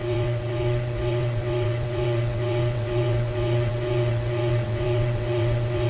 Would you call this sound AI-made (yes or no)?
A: yes